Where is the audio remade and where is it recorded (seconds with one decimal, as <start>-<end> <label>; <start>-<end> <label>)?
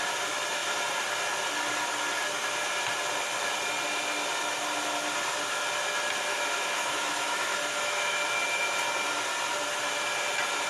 0.0-6.3 recorded; 6.3-8.3 remade; 8.3-10.7 recorded